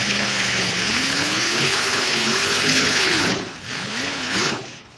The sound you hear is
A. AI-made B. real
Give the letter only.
A